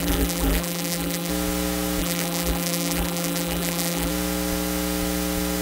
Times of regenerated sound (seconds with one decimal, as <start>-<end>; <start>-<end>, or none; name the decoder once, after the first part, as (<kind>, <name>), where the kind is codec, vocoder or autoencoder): 0.0-1.3 (vocoder, BigVGAN v2); 2.0-4.1